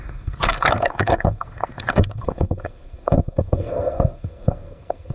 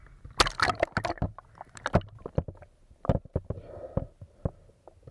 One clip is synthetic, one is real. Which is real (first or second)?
second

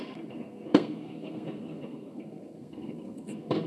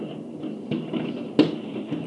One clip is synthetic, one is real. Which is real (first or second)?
second